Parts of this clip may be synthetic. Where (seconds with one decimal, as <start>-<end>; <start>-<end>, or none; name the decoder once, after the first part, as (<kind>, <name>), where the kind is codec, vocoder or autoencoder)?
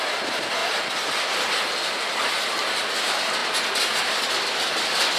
none